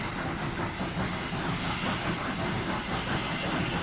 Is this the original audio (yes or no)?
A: yes